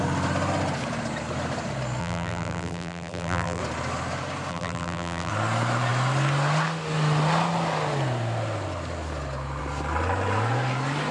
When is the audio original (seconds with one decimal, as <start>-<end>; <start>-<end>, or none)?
0.0-2.0; 3.6-4.5; 5.3-11.1

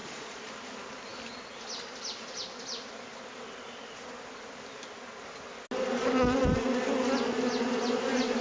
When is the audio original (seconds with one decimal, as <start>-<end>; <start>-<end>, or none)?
0.5-8.4

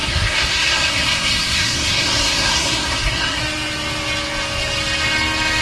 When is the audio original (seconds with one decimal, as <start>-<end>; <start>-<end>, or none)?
3.4-5.6